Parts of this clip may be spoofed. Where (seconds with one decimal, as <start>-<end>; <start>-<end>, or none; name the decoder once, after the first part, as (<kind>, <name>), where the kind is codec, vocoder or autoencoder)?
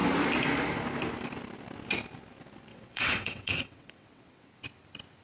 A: 2.7-4.5 (vocoder, WaveNeXt)